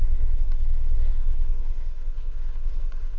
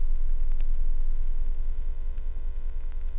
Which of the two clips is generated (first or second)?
first